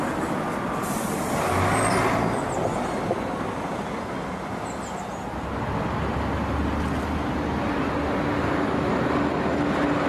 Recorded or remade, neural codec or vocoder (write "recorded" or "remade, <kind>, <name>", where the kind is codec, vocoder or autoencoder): recorded